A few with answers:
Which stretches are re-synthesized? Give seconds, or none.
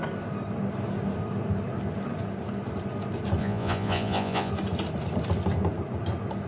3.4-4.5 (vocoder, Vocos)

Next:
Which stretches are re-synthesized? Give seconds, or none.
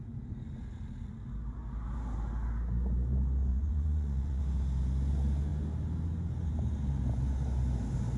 3.5-4.4 (vocoder, Vocos)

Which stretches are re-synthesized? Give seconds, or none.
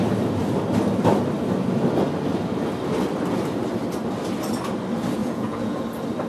5.2-5.8 (vocoder, Vocos)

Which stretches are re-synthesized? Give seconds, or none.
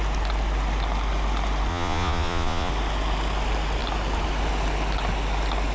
1.7-2.7 (vocoder, Vocos)